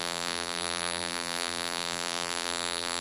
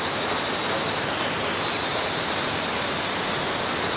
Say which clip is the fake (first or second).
first